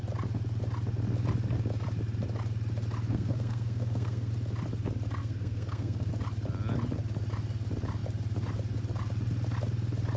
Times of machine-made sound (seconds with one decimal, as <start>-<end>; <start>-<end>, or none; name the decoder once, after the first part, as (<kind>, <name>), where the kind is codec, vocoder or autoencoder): 3.1-4.3 (codec, SNAC); 5.2-6.1